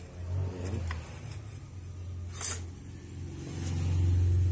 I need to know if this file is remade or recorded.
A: recorded